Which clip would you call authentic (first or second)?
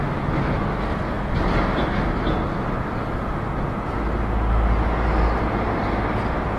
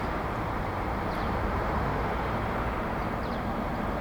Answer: first